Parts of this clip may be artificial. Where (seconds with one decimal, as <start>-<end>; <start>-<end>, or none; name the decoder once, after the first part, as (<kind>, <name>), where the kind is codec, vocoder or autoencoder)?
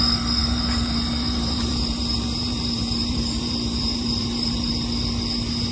0.4-2.0 (vocoder, BigVGAN v2); 2.4-4.7